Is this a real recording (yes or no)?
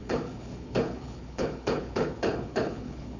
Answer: no